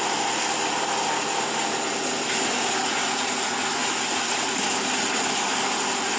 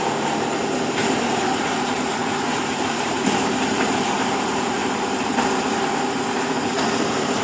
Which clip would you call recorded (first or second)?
first